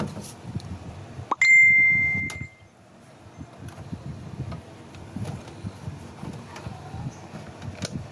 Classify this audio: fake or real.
real